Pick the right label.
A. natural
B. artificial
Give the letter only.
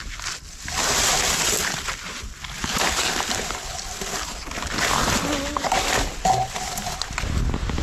A